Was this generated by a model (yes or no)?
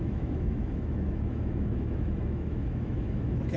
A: yes